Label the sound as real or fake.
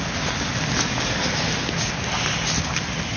real